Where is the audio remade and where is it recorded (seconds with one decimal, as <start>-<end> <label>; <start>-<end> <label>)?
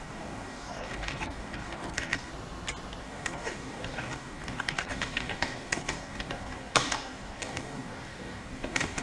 0.0-2.3 remade; 2.3-3.0 recorded; 3.0-9.0 remade